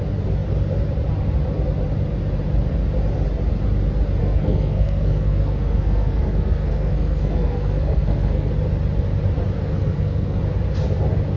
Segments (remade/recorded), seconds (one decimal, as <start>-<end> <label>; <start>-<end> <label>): 0.0-4.2 recorded; 4.2-8.5 remade; 8.5-9.6 recorded; 9.6-10.4 remade; 10.4-11.4 recorded